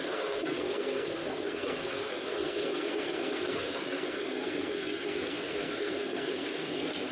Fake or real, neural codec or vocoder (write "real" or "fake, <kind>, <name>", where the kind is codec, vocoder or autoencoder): fake, codec, SNAC